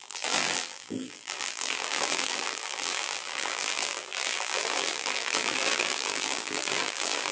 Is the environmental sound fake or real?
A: fake